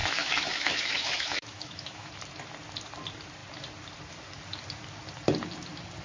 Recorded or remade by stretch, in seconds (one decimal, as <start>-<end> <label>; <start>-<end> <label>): 0.0-2.1 remade; 2.1-6.0 recorded